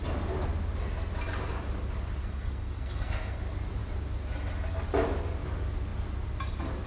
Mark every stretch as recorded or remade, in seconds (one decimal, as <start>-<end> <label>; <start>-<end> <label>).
0.0-2.2 recorded; 2.2-3.4 remade; 3.4-6.9 recorded